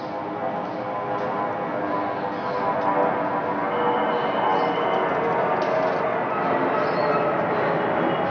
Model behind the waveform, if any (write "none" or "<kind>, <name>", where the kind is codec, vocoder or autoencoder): none